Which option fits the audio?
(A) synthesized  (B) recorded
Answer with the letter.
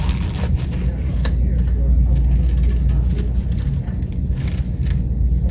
B